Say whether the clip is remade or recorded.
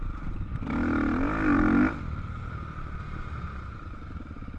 recorded